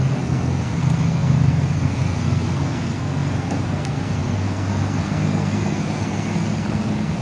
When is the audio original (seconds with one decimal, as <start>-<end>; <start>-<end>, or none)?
none